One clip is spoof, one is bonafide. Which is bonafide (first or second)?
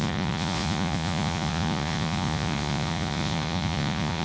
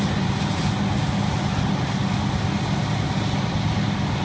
second